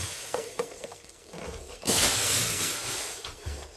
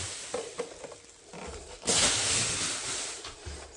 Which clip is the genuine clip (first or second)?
second